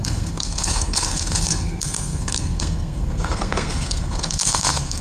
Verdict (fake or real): fake